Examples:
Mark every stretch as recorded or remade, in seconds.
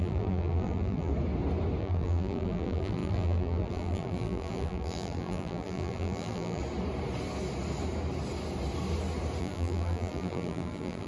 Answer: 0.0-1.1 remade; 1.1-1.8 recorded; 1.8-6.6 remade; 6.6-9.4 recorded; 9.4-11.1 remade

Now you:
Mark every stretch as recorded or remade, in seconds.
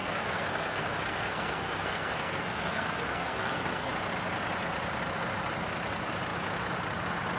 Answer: 0.0-3.9 remade; 3.9-7.4 recorded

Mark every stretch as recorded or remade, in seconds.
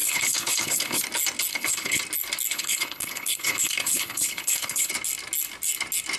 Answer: 0.0-1.0 remade; 1.0-1.5 recorded; 1.5-2.0 remade; 2.0-2.5 recorded; 2.5-4.9 remade; 4.9-6.2 recorded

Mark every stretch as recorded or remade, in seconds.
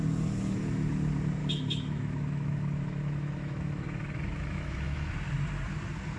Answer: 0.0-1.4 recorded; 1.4-5.1 remade; 5.1-6.2 recorded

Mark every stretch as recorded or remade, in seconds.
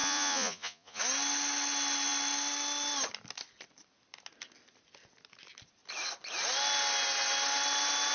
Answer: 0.0-1.0 remade; 1.0-8.1 recorded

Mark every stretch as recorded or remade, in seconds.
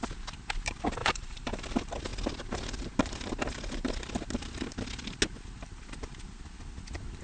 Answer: 0.0-1.0 recorded; 1.0-1.6 remade; 1.6-7.2 recorded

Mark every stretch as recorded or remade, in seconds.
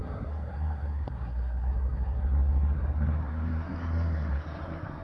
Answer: 0.0-5.0 remade